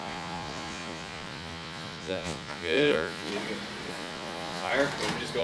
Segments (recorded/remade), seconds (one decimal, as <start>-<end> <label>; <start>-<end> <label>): 0.0-3.3 remade; 3.3-3.9 recorded; 3.9-4.7 remade; 4.7-5.4 recorded

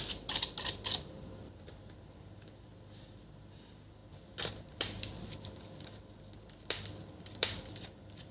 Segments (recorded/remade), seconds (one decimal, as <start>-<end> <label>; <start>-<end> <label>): 0.0-4.0 remade; 4.0-4.5 recorded; 4.5-8.3 remade

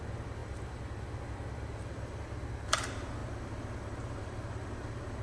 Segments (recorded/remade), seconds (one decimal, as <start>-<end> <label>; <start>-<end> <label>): 0.0-5.2 recorded

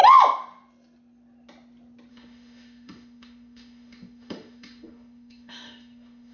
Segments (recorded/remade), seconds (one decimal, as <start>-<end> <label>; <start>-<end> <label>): 0.0-2.1 recorded; 2.1-6.3 remade